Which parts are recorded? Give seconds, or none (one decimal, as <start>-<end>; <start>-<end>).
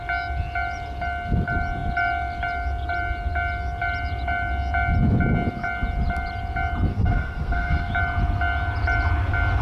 0.0-6.9; 7.9-9.6